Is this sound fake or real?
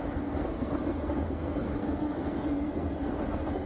fake